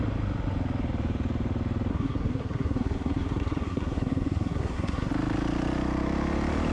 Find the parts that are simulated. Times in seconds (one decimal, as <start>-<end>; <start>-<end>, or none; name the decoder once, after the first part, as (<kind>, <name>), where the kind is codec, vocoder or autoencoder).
1.9-5.1 (codec, SNAC)